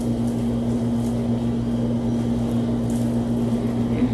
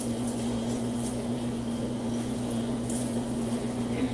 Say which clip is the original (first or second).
first